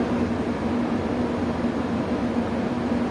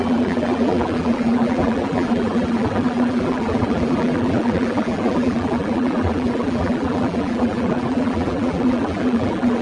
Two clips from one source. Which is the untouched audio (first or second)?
first